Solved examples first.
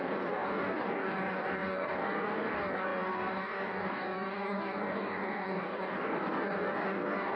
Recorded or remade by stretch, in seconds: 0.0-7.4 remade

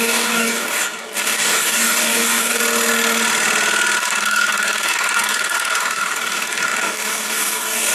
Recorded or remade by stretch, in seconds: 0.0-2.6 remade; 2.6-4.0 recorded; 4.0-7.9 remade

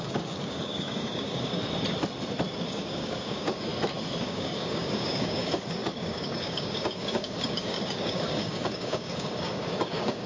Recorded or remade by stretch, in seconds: 0.0-1.5 remade; 1.5-2.6 recorded; 2.6-3.7 remade; 3.7-4.2 recorded; 4.2-10.3 remade

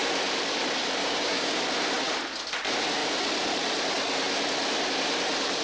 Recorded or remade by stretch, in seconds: 0.0-1.0 recorded; 1.0-1.6 remade; 1.6-5.6 recorded

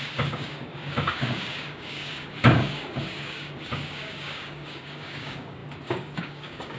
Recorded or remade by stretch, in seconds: 0.0-6.8 remade

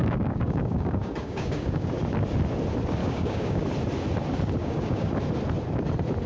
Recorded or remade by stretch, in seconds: 0.0-1.9 remade; 1.9-3.0 recorded; 3.0-3.6 remade; 3.6-4.6 recorded; 4.6-5.1 remade; 5.1-6.3 recorded

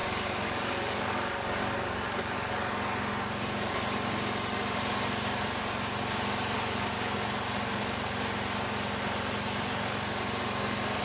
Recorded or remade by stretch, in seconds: 0.0-3.1 remade; 3.1-11.0 recorded